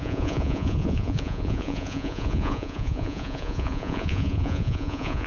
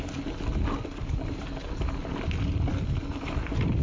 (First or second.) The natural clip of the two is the second